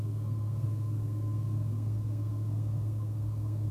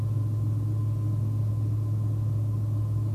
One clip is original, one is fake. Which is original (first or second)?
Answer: second